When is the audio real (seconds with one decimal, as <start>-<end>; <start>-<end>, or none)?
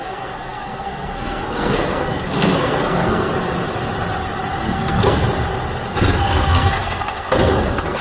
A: 3.3-4.6; 5.2-5.9